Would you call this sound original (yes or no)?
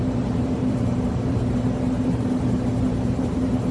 no